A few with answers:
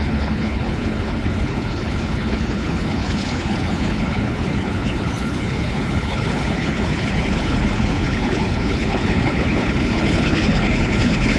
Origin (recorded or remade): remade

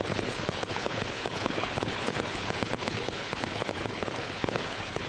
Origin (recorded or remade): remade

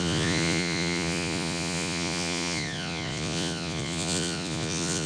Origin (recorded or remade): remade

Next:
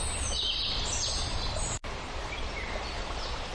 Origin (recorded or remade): recorded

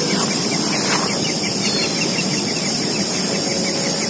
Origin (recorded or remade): recorded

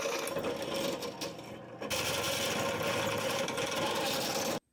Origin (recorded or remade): recorded